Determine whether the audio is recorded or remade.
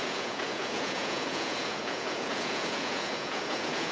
remade